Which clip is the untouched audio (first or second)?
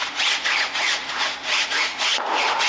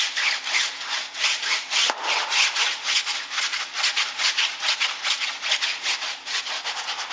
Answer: second